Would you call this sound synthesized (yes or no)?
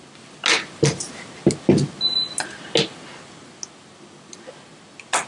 no